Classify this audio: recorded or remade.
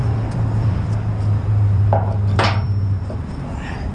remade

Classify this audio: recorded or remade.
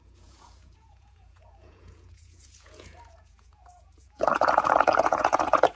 remade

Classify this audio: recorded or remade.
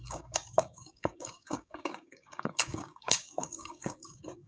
remade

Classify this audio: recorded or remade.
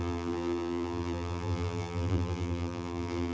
remade